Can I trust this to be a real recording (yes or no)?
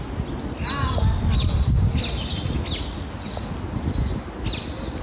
yes